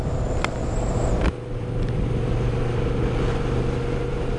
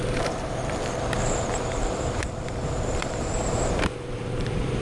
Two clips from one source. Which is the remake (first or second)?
second